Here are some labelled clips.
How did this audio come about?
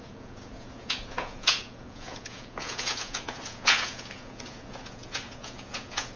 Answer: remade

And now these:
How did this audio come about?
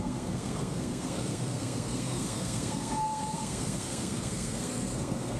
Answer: remade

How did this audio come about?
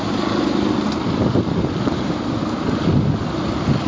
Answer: recorded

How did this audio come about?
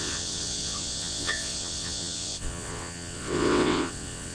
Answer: remade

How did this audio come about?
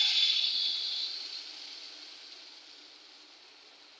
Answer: recorded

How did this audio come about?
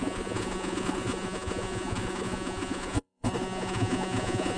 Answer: remade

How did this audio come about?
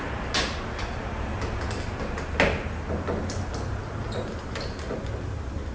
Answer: recorded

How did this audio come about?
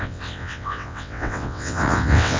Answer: remade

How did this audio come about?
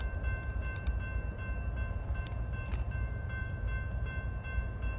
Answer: remade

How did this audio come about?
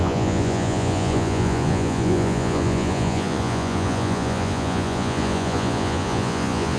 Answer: remade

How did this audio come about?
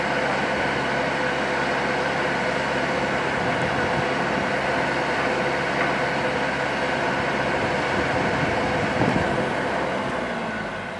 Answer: recorded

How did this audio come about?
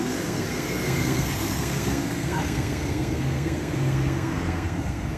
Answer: remade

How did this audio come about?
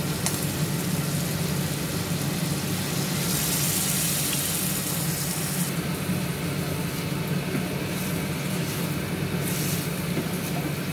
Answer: recorded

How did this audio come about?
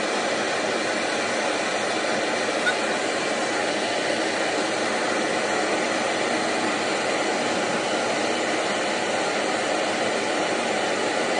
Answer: recorded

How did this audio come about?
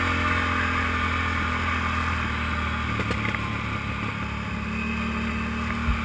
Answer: recorded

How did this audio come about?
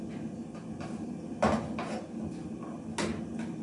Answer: recorded